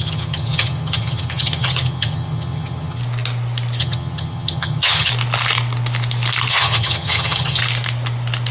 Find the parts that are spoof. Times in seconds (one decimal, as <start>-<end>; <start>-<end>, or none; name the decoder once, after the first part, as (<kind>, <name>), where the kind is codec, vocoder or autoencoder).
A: 0.0-3.0 (vocoder, HiFi-GAN); 3.8-5.1; 6.5-7.6